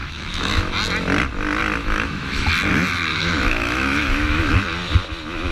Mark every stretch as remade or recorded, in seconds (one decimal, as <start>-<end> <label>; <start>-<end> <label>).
0.0-0.7 remade; 0.7-1.8 recorded; 1.8-2.5 remade; 2.5-3.1 recorded; 3.1-4.5 remade; 4.5-5.5 recorded